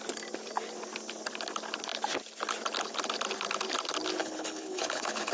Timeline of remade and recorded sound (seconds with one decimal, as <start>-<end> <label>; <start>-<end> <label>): 0.0-4.2 recorded; 4.2-5.3 remade